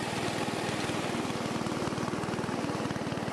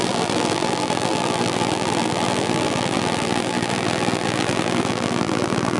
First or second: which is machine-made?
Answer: second